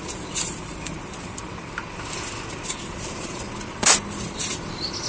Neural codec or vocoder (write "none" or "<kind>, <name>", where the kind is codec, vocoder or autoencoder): vocoder, BigVGAN v2